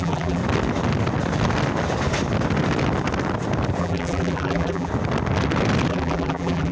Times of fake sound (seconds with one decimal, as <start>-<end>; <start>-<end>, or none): 0.0-0.4; 3.8-4.9; 5.9-6.7